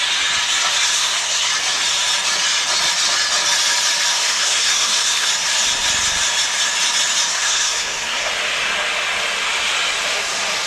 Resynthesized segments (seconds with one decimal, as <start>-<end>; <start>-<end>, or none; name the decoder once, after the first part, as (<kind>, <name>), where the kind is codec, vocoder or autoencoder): 0.9-1.5 (codec, SNAC); 4.1-5.3; 7.3-8.3